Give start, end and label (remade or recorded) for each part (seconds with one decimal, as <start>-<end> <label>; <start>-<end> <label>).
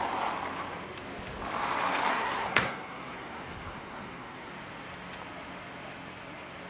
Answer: 0.0-2.1 recorded; 2.1-4.5 remade; 4.5-6.7 recorded